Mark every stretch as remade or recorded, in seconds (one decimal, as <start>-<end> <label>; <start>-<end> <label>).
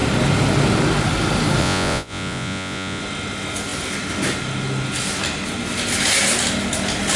0.0-1.6 recorded; 1.6-3.0 remade; 3.0-7.2 recorded